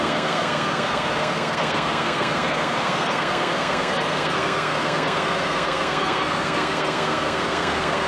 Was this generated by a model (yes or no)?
yes